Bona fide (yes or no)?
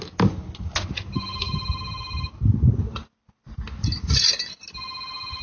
yes